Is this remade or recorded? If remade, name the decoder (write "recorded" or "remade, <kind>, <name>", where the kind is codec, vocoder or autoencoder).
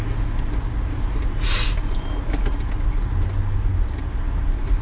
recorded